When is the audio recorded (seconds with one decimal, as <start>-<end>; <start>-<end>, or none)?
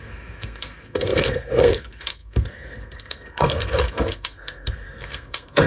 none